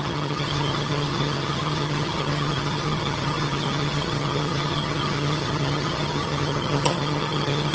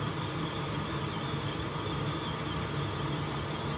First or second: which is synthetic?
first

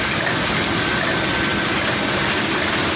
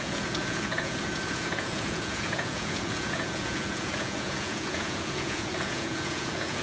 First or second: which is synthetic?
second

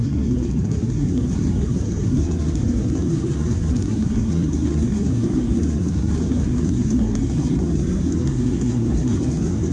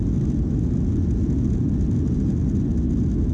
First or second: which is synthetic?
first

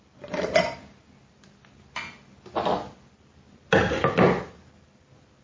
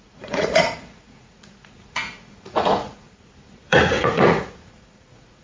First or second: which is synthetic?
second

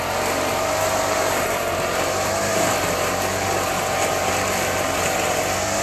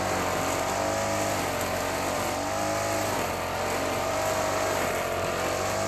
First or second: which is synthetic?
first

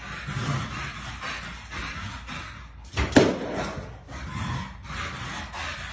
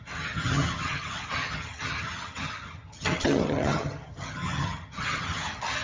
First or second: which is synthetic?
second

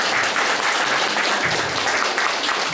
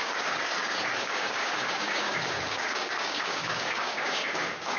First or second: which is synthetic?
second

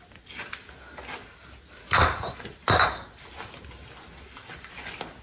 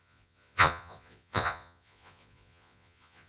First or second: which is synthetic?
second